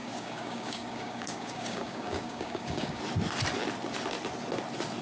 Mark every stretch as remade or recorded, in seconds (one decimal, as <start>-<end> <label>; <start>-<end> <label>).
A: 0.0-3.0 remade; 3.0-5.0 recorded